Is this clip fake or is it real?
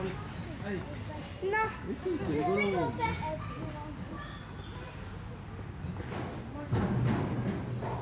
real